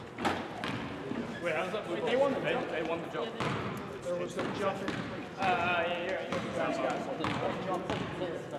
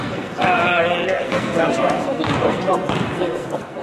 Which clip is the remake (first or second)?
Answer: second